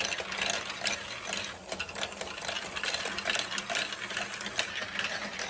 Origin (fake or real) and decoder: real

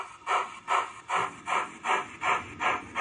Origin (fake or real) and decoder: real